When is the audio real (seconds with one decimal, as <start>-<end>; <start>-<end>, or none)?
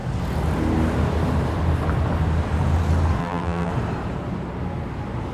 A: 0.0-3.2; 3.7-5.3